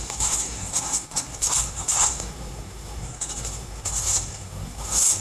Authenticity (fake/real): fake